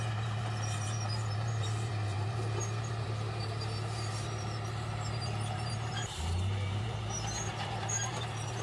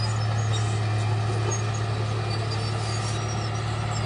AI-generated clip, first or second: first